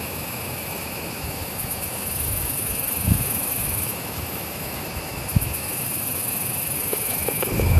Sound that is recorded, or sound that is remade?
remade